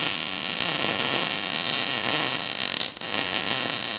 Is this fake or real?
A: fake